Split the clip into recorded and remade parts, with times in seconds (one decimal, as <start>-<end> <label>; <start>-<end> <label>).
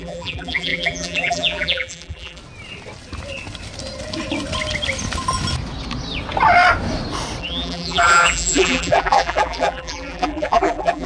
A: 0.0-2.4 remade; 2.4-7.4 recorded; 7.4-11.1 remade